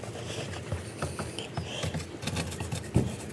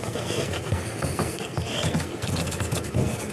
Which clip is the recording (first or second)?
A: first